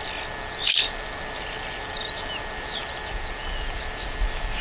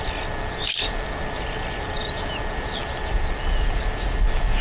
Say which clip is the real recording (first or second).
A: first